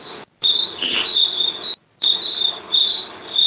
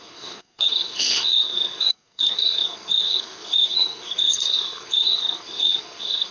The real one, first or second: first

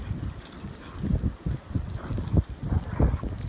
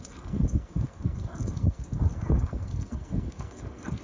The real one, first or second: first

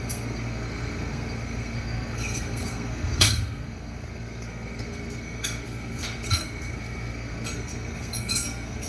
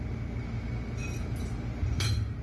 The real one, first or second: second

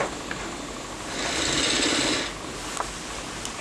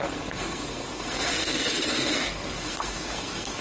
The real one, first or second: first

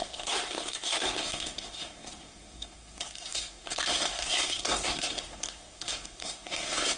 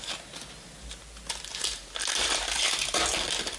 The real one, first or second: second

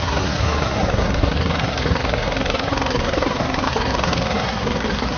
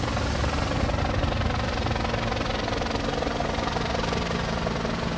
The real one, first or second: second